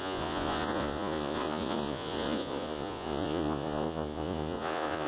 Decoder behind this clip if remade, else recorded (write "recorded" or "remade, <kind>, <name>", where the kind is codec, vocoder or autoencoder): remade, vocoder, Vocos